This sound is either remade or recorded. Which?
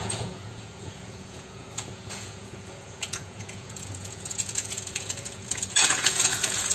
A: remade